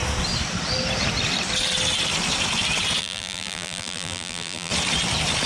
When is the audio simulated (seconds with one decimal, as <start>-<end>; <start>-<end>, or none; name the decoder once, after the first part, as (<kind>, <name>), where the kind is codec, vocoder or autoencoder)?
3.0-4.7 (vocoder, BigVGAN v2)